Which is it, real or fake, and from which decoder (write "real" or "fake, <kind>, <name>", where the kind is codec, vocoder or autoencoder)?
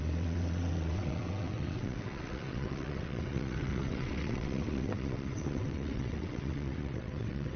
fake, vocoder, WaveNeXt